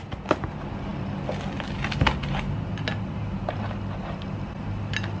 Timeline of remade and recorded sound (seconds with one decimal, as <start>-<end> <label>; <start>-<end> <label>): 0.0-5.2 recorded